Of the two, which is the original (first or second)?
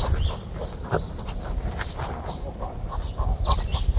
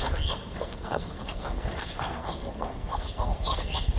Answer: first